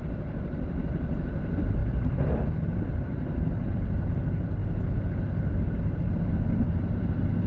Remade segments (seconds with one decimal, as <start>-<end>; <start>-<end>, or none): 0.0-0.8; 1.3-4.6; 5.7-7.5